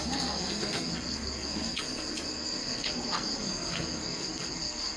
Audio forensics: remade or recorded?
remade